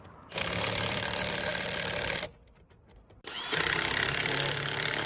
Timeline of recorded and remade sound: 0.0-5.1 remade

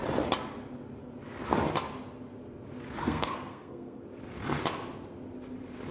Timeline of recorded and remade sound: 0.0-3.0 recorded; 3.0-4.0 remade; 4.0-5.9 recorded

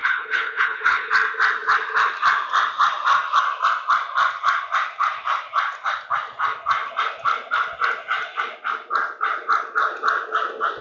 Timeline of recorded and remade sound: 0.0-1.1 remade; 1.1-10.8 recorded

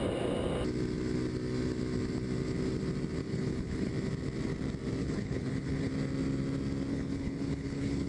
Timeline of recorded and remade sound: 0.0-3.2 recorded; 3.2-3.9 remade; 3.9-5.0 recorded; 5.0-5.9 remade; 5.9-6.9 recorded; 6.9-8.1 remade

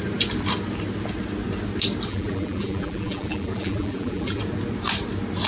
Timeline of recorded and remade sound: 0.0-2.1 recorded; 2.1-4.4 remade; 4.4-5.5 recorded

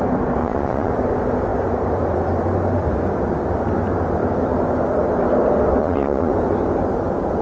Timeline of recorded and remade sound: 0.0-0.4 recorded; 0.4-0.9 remade; 0.9-5.8 recorded; 5.8-6.3 remade; 6.3-7.4 recorded